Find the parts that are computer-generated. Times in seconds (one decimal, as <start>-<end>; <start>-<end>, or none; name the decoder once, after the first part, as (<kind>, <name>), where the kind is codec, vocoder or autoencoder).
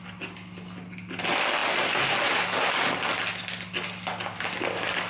none